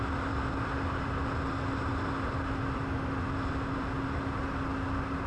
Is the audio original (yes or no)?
yes